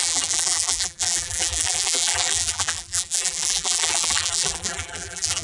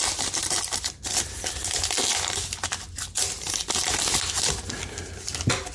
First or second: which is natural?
second